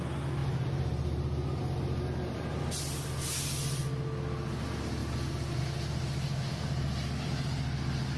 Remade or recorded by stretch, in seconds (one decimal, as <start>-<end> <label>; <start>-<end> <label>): 0.0-8.2 recorded